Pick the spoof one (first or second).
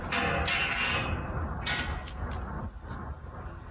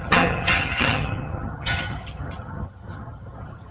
second